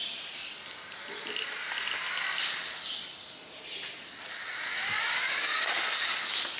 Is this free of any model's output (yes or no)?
yes